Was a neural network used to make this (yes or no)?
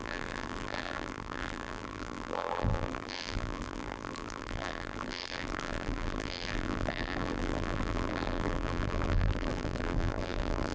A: yes